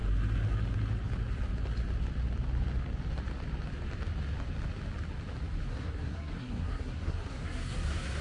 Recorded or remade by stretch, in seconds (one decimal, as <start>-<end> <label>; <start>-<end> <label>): 0.0-5.7 recorded; 5.7-8.2 remade